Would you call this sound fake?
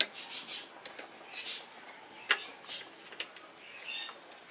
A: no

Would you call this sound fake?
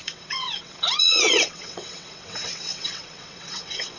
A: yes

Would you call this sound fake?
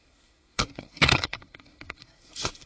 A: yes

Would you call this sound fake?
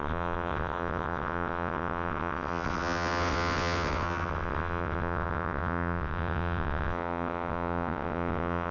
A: yes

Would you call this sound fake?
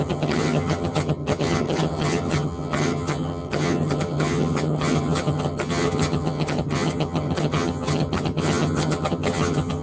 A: yes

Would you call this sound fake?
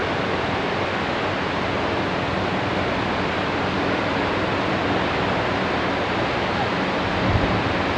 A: no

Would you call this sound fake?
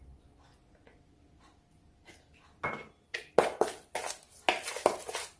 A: no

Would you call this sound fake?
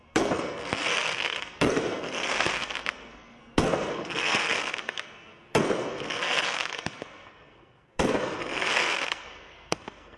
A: yes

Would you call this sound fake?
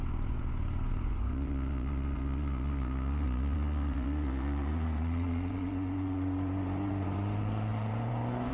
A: yes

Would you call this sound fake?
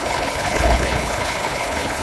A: yes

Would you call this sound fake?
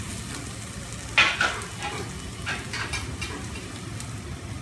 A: no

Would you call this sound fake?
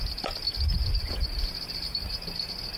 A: no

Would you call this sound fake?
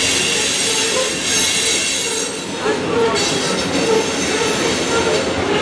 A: no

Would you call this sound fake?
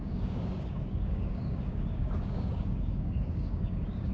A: yes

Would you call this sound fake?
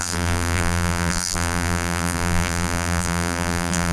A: yes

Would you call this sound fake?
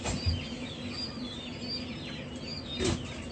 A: no